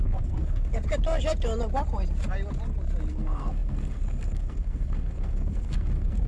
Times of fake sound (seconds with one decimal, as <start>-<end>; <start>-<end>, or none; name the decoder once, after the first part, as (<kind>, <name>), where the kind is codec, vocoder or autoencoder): 0.0-0.7 (codec, SNAC); 3.1-6.3